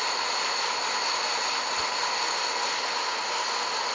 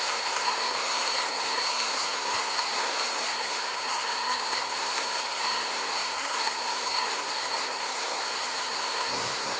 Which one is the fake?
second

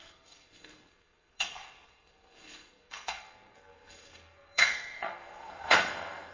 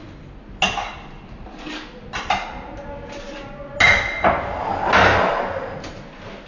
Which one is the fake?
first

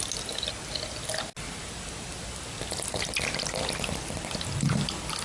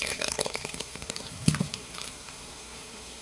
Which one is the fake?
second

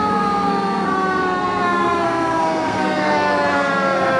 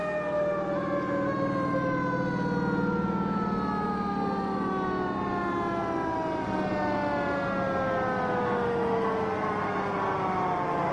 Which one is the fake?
first